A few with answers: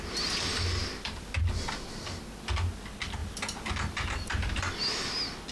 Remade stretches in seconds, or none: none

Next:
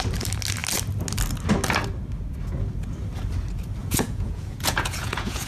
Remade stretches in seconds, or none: 3.8-5.5 (vocoder, Vocos)

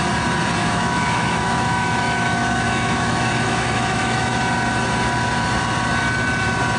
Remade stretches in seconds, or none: 0.6-4.4 (autoencoder, DAC-VAE)

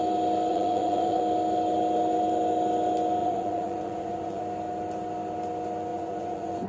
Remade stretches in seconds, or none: 0.5-1.2 (vocoder, Vocos); 3.2-4.4; 5.9-6.7

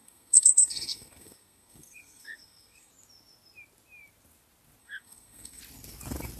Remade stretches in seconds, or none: 0.0-2.9 (codec, SNAC); 4.8-5.6

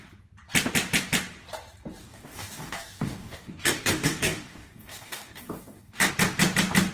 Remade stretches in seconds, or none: 2.0-6.1 (codec, DAC)